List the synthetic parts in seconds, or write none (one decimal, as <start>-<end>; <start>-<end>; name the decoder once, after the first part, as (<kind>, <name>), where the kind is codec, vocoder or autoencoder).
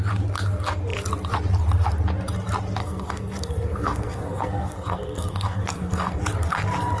2.8-6.2 (codec, SNAC)